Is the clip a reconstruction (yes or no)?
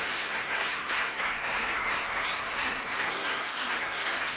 yes